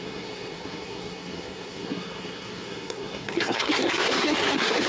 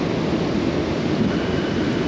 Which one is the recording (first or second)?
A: second